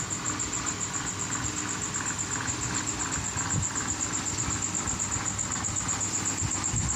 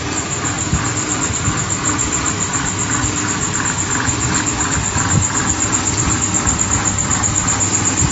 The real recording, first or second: first